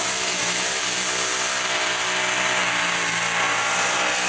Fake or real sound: real